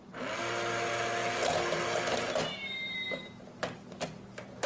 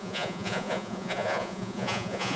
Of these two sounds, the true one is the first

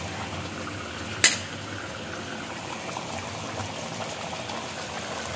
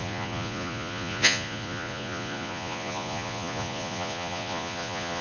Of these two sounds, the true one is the first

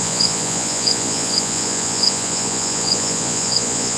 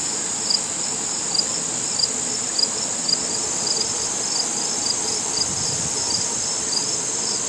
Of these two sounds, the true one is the second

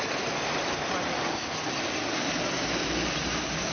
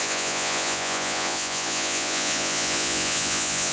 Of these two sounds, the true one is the first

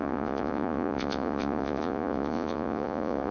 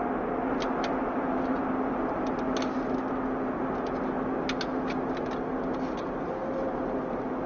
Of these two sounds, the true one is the second